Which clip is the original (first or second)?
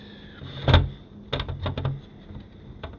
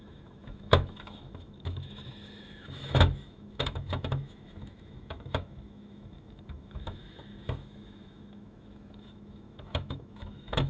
first